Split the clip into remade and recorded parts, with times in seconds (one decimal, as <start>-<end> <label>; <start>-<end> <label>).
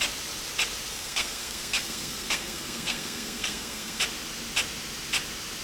0.0-0.9 recorded; 0.9-4.0 remade; 4.0-5.6 recorded